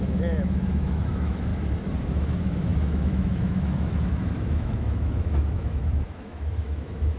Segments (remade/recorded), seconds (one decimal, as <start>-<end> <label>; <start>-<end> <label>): 0.0-1.5 remade; 1.5-2.1 recorded; 2.1-7.2 remade